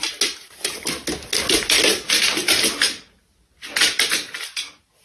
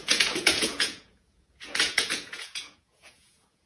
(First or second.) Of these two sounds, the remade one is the second